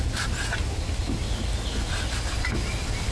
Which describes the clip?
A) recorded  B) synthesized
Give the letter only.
A